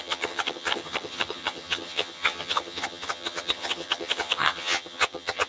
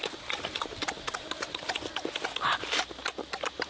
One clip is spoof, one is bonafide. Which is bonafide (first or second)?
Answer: second